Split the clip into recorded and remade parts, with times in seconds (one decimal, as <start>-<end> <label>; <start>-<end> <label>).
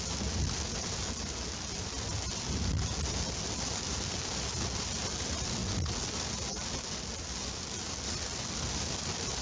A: 0.0-9.4 recorded